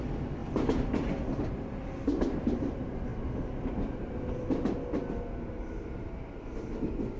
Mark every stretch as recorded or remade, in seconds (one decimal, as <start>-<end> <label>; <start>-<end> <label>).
0.0-7.2 recorded